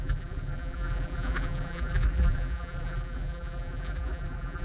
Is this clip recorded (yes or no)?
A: no